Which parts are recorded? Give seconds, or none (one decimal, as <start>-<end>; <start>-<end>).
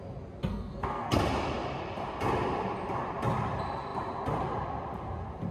0.0-0.5; 1.1-5.5